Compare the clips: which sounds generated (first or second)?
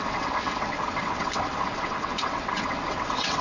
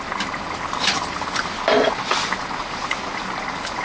first